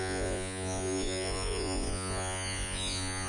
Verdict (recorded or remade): remade